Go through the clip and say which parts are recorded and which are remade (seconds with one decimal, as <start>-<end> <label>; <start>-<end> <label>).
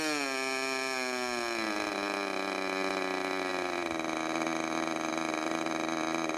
0.0-6.4 recorded